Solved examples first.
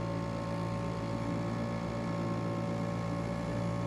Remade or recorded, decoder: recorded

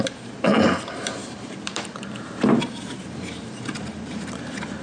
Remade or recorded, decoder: remade, vocoder, BigVGAN v2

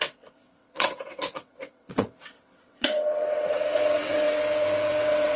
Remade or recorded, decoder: remade, vocoder, WaveNeXt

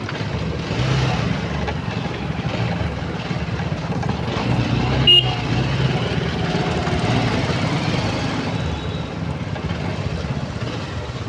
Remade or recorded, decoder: recorded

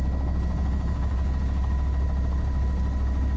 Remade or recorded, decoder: recorded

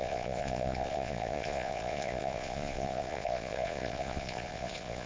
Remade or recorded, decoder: remade, vocoder, Vocos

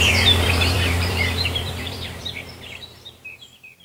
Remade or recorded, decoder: remade, vocoder, BigVGAN v2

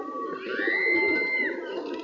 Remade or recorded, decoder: recorded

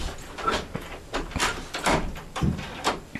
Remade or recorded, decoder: remade, vocoder, BigVGAN v2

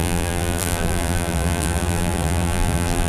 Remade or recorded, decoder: remade, vocoder, BigVGAN v2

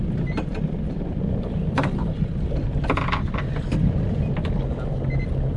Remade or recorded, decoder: recorded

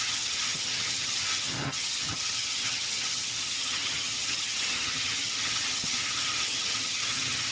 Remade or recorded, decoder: remade, vocoder, HiFi-GAN